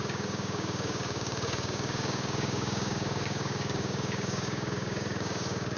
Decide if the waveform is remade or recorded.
remade